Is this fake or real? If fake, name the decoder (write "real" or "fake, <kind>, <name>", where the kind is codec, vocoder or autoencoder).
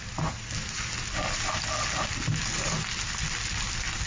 real